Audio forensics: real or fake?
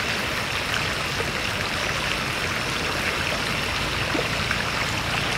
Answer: real